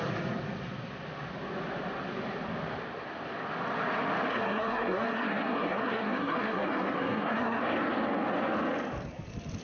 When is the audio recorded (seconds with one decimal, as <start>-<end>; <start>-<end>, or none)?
0.0-4.3; 7.6-9.6